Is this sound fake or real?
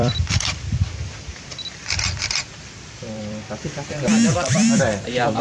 fake